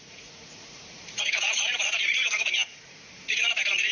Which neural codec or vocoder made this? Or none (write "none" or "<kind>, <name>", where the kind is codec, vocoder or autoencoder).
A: vocoder, Vocos